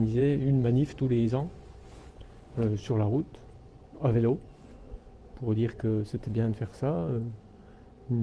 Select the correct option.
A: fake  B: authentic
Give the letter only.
A